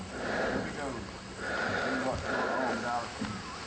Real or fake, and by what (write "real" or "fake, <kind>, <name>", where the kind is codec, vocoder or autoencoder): real